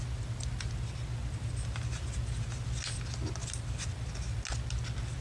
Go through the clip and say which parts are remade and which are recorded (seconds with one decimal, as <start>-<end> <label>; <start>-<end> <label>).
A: 0.0-5.2 recorded